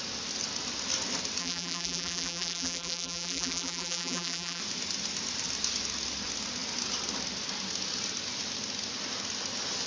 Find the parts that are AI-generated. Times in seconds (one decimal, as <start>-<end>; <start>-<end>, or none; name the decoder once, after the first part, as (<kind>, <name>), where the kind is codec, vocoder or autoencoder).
1.4-4.6 (vocoder, BigVGAN v2)